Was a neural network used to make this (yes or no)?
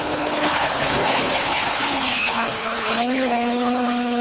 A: yes